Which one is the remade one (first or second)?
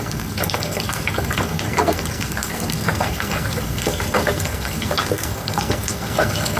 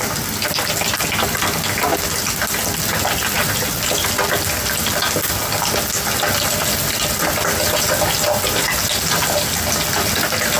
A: first